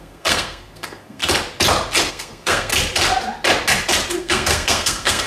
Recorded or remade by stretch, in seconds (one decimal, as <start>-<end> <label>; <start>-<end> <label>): 0.0-1.2 remade; 1.2-2.1 recorded; 2.1-2.7 remade; 2.7-4.2 recorded; 4.2-5.3 remade